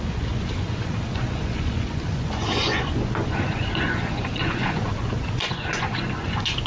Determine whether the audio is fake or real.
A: fake